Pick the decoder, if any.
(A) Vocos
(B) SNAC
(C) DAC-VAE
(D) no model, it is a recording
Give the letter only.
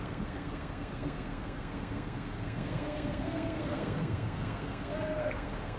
B